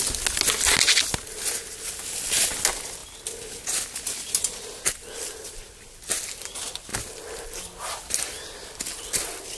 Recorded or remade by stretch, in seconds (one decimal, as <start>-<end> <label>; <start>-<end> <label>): 0.0-9.6 recorded